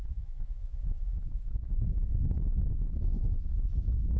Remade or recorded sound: remade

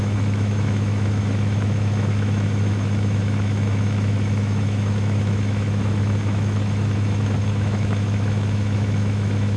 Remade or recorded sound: remade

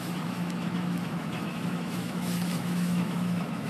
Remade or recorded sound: remade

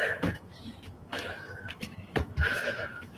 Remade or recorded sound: remade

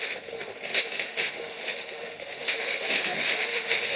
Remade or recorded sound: remade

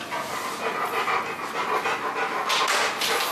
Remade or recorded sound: recorded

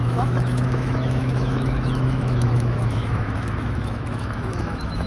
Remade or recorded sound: remade